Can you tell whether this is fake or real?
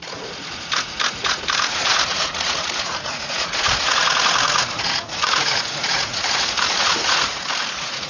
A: fake